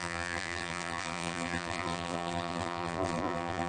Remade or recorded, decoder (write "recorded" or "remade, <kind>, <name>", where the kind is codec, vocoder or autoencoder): remade, vocoder, BigVGAN v2